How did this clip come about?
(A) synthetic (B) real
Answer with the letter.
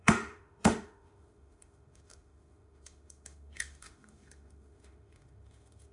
A